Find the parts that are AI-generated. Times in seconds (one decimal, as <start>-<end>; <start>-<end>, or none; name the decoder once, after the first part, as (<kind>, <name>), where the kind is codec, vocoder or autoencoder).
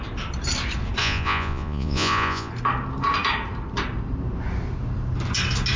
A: 1.0-2.5 (vocoder, Vocos)